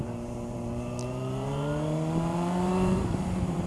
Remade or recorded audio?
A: remade